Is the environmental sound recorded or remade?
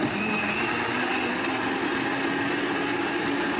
recorded